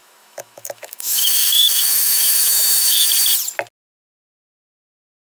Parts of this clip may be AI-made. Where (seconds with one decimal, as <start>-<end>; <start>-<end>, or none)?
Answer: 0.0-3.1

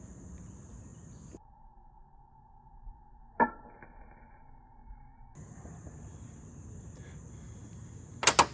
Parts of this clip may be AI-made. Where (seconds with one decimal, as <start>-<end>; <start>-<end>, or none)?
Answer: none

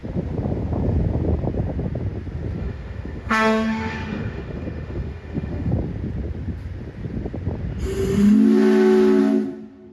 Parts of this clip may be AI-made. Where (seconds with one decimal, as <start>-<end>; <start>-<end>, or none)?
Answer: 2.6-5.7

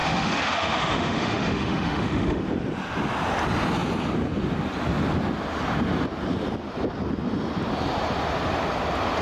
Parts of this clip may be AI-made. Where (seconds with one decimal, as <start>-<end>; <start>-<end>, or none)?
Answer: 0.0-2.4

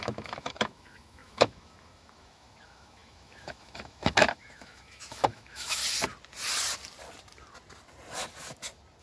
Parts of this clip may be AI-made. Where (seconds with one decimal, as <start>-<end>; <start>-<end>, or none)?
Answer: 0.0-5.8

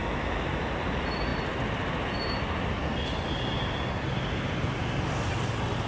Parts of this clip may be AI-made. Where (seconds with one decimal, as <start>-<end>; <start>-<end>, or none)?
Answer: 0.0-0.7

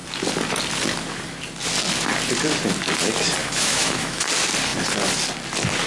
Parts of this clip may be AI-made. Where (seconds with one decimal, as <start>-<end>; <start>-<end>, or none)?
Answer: 3.4-4.2

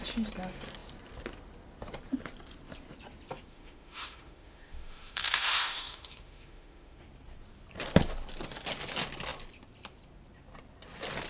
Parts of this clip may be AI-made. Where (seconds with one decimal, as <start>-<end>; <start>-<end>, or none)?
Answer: 3.5-7.0